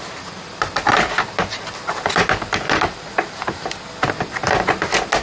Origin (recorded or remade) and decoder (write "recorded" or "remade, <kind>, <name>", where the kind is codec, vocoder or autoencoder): recorded